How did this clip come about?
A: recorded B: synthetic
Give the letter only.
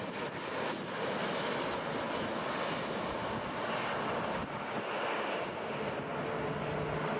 A